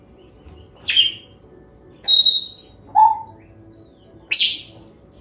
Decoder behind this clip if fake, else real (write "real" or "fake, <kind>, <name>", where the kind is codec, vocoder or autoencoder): real